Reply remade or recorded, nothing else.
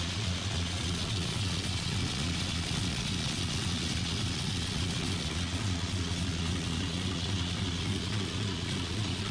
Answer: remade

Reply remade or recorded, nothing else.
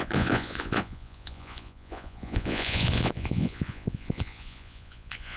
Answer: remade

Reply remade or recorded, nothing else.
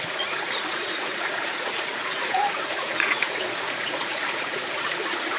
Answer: remade